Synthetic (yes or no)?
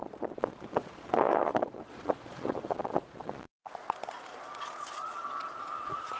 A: yes